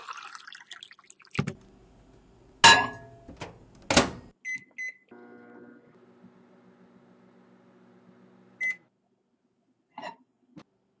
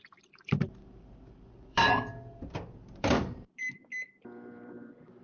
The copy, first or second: second